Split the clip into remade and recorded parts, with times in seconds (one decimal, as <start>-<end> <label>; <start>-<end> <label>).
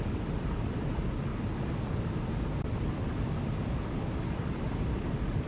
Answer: 0.0-5.5 recorded